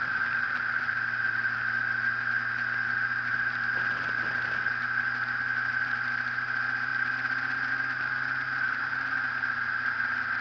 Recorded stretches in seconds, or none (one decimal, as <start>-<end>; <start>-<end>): 0.0-10.4